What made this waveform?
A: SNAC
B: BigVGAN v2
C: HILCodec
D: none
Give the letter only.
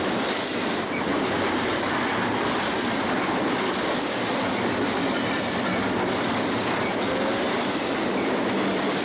D